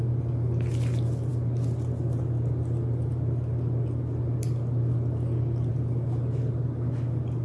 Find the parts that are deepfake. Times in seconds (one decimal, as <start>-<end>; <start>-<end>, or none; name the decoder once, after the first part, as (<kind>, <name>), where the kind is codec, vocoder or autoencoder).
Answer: none